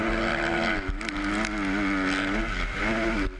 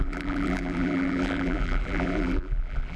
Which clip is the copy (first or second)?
second